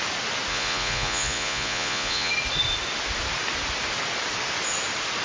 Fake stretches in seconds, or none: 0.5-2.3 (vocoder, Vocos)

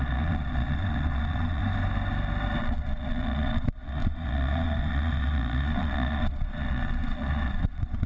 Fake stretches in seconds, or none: 0.0-1.6 (vocoder, Vocos); 2.6-8.1

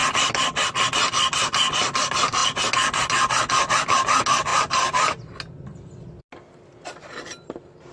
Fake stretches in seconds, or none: none

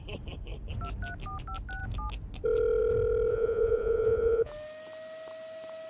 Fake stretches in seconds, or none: 3.3-4.5 (vocoder, Vocos)

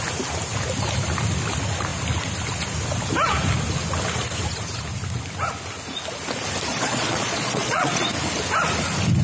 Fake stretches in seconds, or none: 6.7-8.1 (vocoder, Vocos)

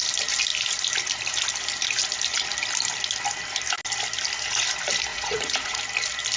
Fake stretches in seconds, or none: 5.1-5.8 (vocoder, Vocos)

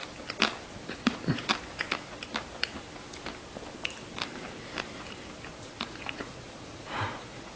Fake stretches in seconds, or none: 0.9-1.5 (vocoder, Vocos); 5.6-7.6